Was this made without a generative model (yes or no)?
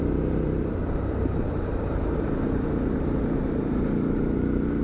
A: no